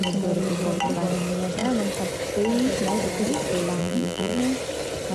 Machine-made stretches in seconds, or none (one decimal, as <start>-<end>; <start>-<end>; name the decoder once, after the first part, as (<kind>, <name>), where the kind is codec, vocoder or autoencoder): 3.8-4.4 (vocoder, BigVGAN v2)